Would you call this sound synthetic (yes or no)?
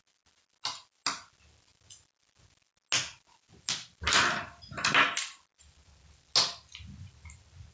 no